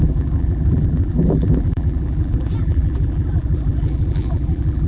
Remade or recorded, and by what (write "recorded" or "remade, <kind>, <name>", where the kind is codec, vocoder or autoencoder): remade, vocoder, BigVGAN v2